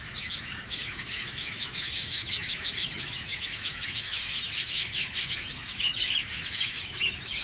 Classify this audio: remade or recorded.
remade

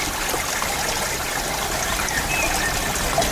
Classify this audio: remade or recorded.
recorded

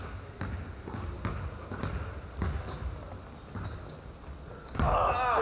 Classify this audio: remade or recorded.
recorded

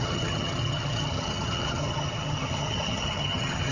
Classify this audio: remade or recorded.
remade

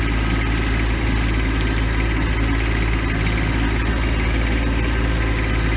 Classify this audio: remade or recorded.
recorded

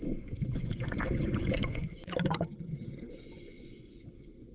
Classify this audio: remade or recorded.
remade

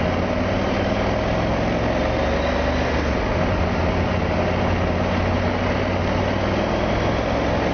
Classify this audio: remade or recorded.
recorded